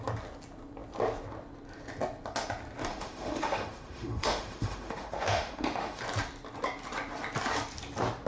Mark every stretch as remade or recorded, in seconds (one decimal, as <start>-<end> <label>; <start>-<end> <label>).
0.0-2.9 recorded; 2.9-6.0 remade; 6.0-8.3 recorded